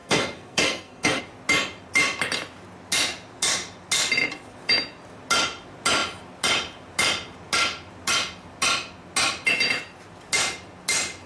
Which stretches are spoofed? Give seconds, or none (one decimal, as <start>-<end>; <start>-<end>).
0.0-1.2